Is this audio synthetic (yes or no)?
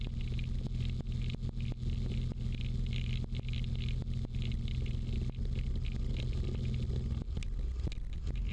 no